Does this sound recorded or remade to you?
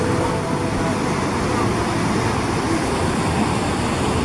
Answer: recorded